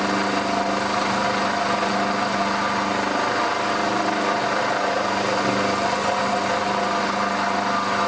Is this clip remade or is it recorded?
recorded